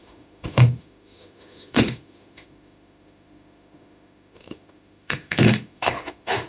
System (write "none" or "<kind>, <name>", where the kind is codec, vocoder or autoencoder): autoencoder, DAC-VAE